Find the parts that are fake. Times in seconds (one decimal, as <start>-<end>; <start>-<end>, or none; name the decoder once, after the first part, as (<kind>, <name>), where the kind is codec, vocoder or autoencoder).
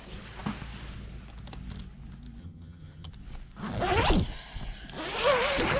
2.4-3.1 (vocoder, HiFi-GAN)